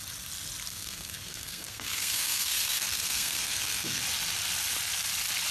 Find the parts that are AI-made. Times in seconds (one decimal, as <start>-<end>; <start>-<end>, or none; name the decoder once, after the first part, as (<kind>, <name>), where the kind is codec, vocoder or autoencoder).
0.7-4.0 (codec, SNAC)

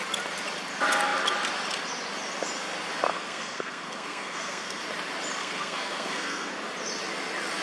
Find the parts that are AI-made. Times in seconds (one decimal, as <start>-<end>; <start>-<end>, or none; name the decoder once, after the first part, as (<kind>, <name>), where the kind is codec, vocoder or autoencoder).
3.1-4.8 (codec, SNAC); 5.4-6.5

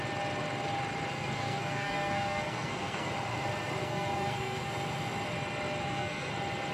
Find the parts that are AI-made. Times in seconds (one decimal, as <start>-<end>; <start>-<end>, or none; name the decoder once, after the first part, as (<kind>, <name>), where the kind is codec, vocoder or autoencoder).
1.1-3.1 (codec, SNAC); 3.8-4.7; 5.8-6.3

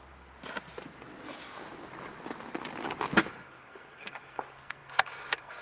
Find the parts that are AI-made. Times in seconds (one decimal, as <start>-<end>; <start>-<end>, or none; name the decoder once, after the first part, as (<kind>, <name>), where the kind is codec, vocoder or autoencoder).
3.3-5.6 (codec, SNAC)

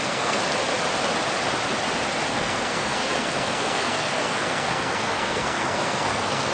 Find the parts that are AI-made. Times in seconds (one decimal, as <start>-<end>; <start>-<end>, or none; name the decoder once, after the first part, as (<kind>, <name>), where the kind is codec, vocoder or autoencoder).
0.0-0.4 (codec, SNAC); 2.3-6.5

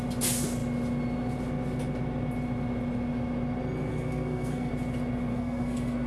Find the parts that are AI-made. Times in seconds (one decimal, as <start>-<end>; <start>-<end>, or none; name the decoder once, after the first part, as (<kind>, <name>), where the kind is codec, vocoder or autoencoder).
3.9-4.7 (codec, SNAC); 5.3-6.1

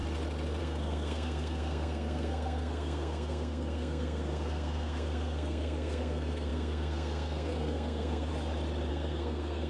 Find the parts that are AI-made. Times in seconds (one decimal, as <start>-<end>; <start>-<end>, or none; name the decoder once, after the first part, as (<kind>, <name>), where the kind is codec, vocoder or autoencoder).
0.6-8.3 (codec, SNAC); 8.9-9.7